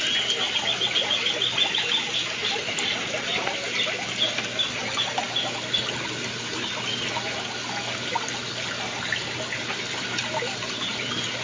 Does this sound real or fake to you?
real